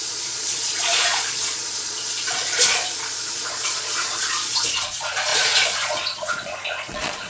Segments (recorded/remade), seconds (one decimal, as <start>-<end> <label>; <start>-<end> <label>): 0.0-7.3 remade